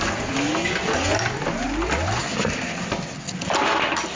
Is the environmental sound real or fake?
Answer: real